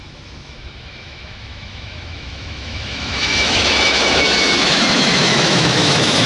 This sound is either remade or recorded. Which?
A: remade